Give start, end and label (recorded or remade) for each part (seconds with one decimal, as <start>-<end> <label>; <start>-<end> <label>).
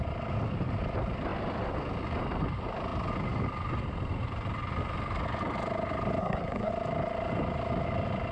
0.0-6.2 recorded; 6.2-6.7 remade; 6.7-8.3 recorded